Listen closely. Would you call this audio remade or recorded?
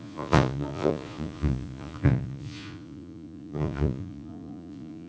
remade